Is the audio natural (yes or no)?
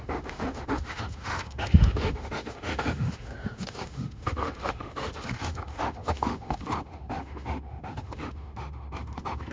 no